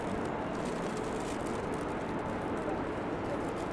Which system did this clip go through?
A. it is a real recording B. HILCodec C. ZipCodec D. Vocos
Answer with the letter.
A